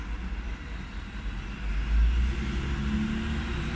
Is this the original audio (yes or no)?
yes